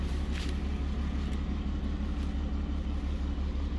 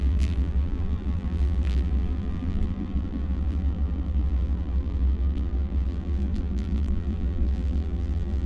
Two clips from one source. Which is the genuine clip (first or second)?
first